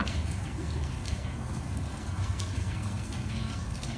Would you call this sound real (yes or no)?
no